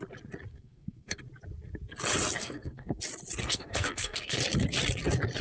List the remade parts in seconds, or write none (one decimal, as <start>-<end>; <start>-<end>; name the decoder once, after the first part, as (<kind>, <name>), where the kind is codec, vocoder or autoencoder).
0.5-1.2 (codec, SNAC); 2.4-3.0; 3.4-4.4